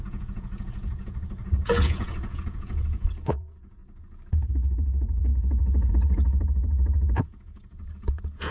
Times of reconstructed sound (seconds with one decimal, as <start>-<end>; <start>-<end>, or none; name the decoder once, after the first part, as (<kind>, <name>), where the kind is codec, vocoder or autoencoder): 0.0-3.8 (vocoder, Vocos); 4.5-8.5